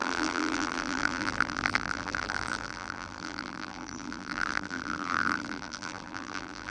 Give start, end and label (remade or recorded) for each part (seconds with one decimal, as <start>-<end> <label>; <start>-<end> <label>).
0.0-6.7 remade